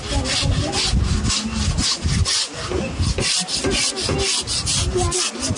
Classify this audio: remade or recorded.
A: recorded